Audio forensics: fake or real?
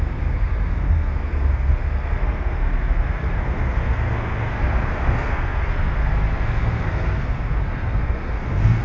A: fake